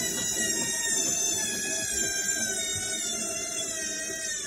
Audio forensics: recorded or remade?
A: recorded